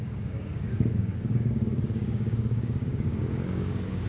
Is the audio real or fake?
fake